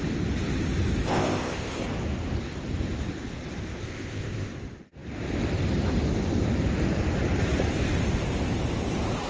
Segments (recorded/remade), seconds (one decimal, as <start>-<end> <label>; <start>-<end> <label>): 0.0-1.1 recorded; 1.1-1.8 remade; 1.8-3.8 recorded; 3.8-4.5 remade; 4.5-9.3 recorded